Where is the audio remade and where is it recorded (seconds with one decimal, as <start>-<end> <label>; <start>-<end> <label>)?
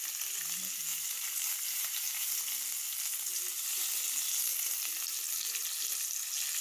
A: 0.0-0.9 recorded; 0.9-2.3 remade; 2.3-6.6 recorded